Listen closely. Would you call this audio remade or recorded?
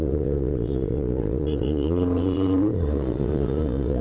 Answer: remade